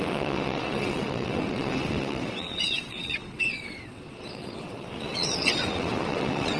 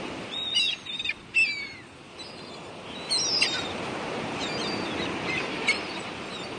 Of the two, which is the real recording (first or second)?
second